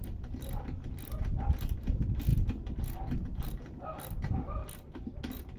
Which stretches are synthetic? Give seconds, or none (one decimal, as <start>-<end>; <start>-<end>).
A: 0.0-0.4; 0.9-2.3; 3.5-5.6